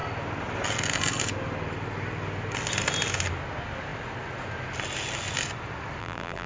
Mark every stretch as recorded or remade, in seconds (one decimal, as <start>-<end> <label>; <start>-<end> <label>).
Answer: 0.0-6.0 recorded; 6.0-6.5 remade